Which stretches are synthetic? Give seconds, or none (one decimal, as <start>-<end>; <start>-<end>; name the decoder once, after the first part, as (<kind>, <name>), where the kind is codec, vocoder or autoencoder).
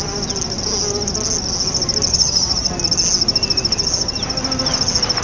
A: 2.1-2.7 (vocoder, HiFi-GAN)